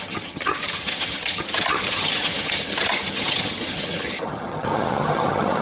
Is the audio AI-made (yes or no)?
yes